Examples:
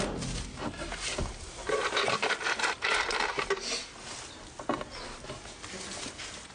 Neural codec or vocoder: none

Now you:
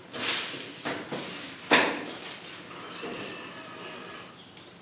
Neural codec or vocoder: none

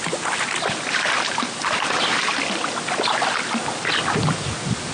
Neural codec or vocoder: none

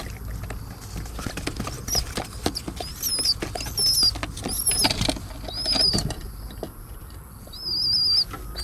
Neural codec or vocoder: none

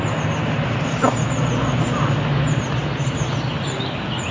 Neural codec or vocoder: none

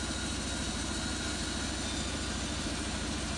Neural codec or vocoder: none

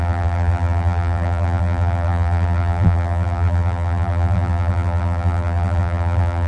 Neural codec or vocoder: vocoder, BigVGAN v2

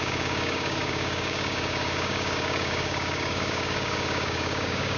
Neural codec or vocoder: codec, DAC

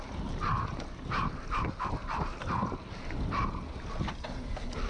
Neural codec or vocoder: none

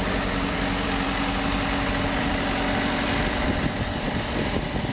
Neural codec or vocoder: vocoder, BigVGAN v2